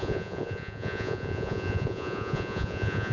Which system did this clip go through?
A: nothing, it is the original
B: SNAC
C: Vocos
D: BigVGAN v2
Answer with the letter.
C